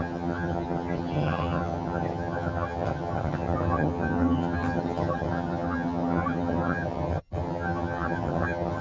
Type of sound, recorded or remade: remade